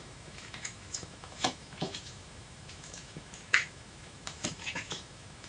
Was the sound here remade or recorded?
remade